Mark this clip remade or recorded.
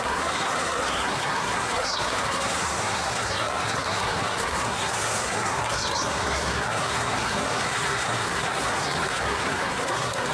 remade